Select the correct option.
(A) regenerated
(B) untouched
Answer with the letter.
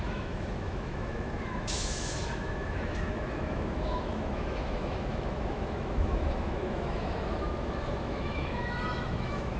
A